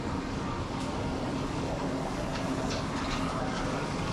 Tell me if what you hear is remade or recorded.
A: remade